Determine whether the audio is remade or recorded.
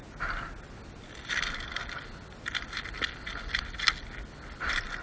recorded